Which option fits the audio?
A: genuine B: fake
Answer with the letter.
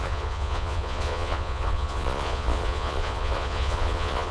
B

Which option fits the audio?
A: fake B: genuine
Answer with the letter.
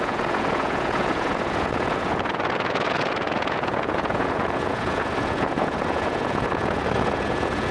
A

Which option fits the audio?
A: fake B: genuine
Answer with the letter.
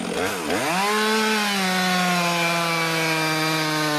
B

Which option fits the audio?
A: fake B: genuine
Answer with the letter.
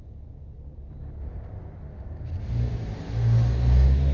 B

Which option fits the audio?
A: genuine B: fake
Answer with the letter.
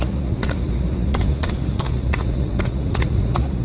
B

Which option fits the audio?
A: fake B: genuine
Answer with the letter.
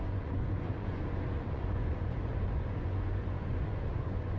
A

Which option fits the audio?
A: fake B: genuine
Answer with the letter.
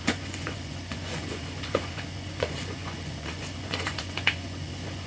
A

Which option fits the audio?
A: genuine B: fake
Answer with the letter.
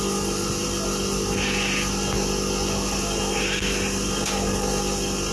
A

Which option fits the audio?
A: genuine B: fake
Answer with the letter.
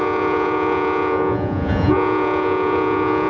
B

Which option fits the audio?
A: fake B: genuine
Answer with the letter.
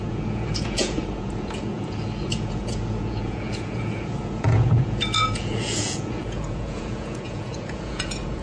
A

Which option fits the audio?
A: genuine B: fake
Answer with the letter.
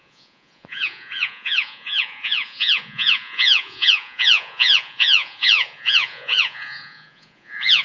B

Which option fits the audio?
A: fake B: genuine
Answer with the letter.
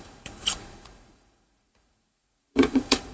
A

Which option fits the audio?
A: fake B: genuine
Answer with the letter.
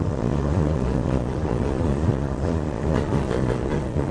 A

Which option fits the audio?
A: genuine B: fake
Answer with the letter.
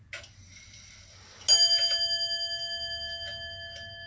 A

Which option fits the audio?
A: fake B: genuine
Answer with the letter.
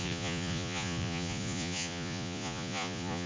A